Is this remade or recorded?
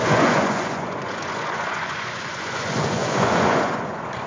remade